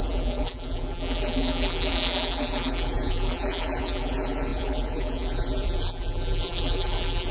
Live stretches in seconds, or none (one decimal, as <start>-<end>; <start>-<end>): none